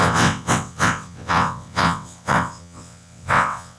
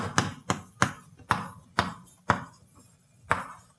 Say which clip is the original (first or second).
second